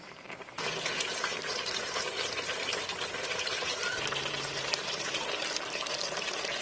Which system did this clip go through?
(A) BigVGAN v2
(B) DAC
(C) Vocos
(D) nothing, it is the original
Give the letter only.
A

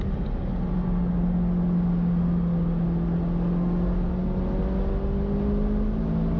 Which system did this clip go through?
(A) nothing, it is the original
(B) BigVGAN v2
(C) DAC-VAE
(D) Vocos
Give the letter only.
A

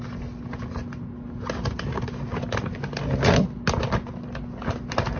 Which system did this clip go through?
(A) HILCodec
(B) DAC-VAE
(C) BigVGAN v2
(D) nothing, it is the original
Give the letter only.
D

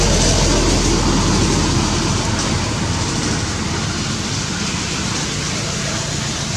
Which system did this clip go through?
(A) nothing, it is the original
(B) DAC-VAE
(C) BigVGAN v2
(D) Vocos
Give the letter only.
A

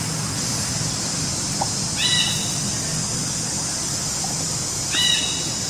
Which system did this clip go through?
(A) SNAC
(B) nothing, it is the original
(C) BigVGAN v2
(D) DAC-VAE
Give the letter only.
B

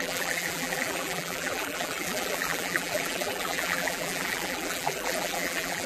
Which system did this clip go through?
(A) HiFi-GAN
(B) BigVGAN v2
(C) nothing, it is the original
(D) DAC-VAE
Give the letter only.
B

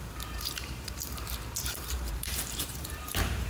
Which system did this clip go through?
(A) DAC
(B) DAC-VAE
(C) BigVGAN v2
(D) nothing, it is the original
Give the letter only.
C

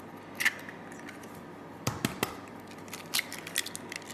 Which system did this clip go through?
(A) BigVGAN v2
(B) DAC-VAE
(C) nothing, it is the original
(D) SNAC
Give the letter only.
C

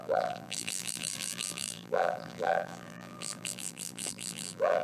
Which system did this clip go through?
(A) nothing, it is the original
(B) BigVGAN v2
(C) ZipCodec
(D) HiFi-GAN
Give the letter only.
B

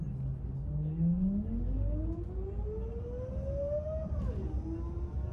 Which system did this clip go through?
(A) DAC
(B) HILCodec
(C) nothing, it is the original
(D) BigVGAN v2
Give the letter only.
C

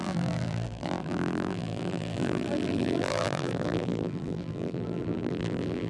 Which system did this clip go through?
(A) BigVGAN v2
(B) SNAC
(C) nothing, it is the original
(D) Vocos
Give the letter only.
A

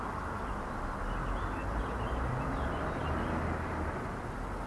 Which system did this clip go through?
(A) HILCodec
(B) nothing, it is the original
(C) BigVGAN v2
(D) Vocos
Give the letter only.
B